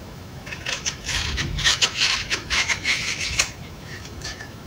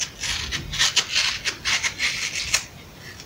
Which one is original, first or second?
second